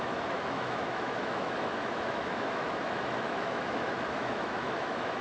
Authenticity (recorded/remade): remade